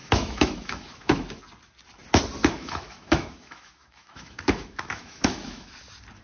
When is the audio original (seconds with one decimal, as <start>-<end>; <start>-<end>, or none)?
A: 1.4-2.4; 5.7-6.2